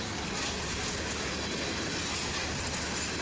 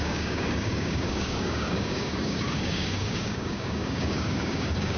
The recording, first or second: first